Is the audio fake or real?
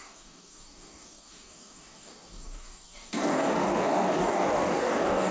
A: fake